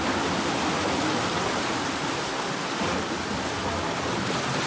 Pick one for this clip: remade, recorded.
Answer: recorded